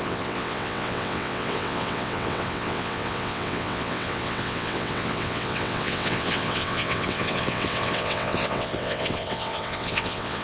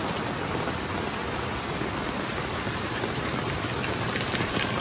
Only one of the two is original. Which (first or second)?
second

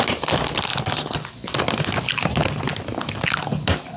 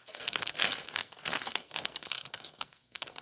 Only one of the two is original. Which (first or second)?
first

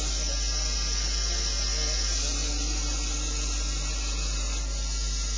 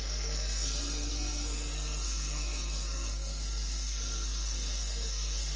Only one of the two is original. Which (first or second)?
first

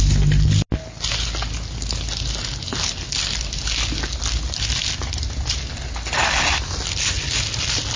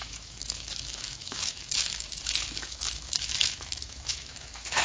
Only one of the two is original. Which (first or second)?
first